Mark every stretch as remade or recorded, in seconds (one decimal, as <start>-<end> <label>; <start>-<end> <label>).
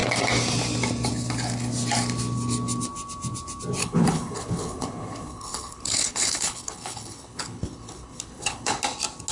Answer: 0.0-3.8 recorded; 3.8-8.8 remade; 8.8-9.3 recorded